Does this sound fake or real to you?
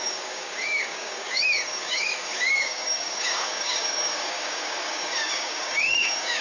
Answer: fake